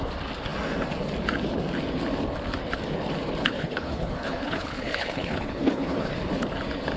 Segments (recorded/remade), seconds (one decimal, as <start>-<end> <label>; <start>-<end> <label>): 0.0-3.4 recorded; 3.4-6.1 remade; 6.1-7.0 recorded